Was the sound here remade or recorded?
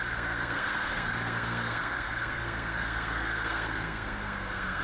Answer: remade